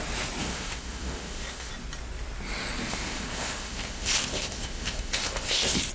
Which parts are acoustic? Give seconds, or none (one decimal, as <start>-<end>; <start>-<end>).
0.0-0.4; 1.7-2.9